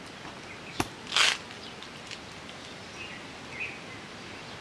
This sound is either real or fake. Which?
real